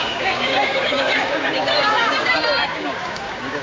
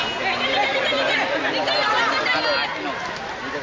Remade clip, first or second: first